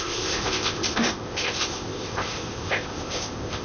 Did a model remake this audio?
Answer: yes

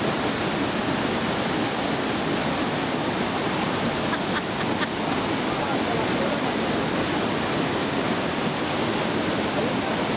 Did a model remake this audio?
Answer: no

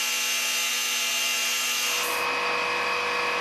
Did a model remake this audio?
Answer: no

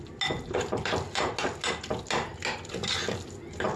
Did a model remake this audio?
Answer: no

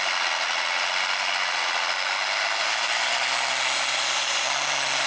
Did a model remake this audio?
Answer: no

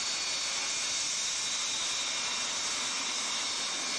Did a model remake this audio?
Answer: no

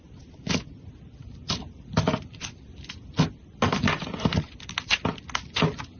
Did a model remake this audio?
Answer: no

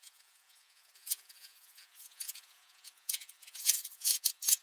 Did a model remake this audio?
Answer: yes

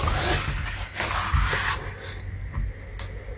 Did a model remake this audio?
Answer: no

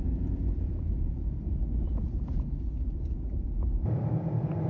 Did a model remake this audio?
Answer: yes